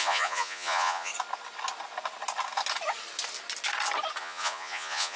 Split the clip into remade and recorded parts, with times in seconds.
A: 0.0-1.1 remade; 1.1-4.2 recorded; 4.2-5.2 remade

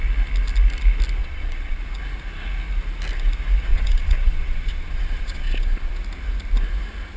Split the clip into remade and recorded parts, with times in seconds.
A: 0.0-1.2 recorded; 1.2-1.8 remade; 1.8-3.7 recorded; 3.7-5.9 remade; 5.9-7.2 recorded

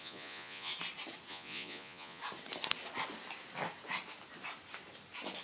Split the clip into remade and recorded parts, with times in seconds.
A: 0.0-0.7 remade; 0.7-1.3 recorded; 1.3-2.2 remade; 2.2-5.4 recorded